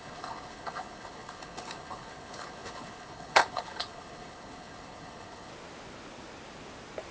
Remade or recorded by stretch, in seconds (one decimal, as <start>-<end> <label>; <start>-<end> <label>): 0.0-5.5 remade; 5.5-7.1 recorded